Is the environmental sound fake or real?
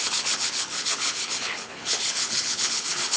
fake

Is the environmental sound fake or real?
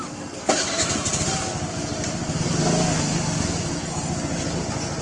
real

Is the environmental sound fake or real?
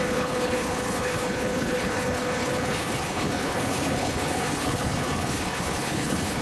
fake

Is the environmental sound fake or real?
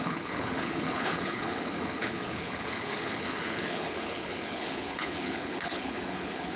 fake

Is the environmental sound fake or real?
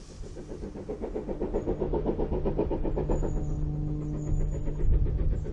real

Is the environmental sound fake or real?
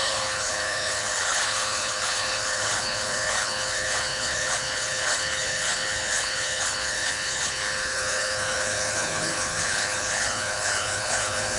fake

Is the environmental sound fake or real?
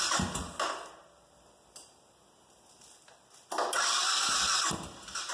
real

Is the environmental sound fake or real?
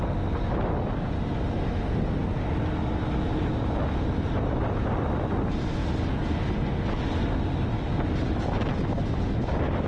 real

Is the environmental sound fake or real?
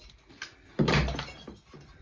real